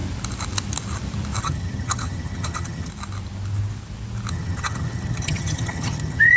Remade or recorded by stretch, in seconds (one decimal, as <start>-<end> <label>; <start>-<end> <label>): 0.0-1.4 recorded; 1.4-2.9 remade; 2.9-4.3 recorded; 4.3-6.4 remade